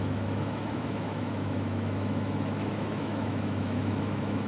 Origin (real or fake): fake